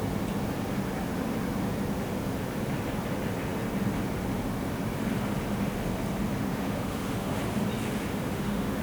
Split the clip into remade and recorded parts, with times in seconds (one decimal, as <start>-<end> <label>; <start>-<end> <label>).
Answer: 0.0-6.4 recorded; 6.4-7.4 remade; 7.4-8.1 recorded; 8.1-8.8 remade